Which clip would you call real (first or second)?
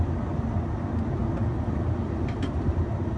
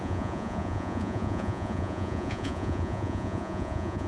first